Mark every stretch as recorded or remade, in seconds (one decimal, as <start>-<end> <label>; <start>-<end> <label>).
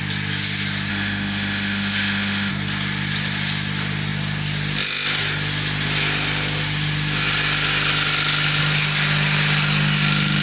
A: 0.0-0.9 recorded; 0.9-2.5 remade; 2.5-10.4 recorded